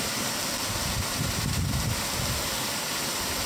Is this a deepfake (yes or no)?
yes